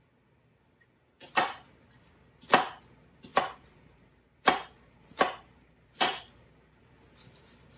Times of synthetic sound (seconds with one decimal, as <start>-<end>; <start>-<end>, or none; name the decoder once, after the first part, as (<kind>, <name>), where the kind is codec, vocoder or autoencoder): 3.3-6.8 (vocoder, BigVGAN v2)